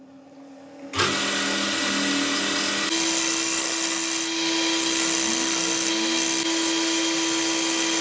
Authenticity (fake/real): real